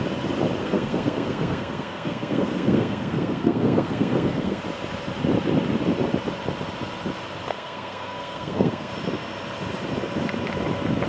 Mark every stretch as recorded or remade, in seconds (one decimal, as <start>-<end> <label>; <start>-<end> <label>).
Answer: 0.0-0.6 recorded; 0.6-4.6 remade; 4.6-7.5 recorded; 7.5-8.9 remade; 8.9-11.1 recorded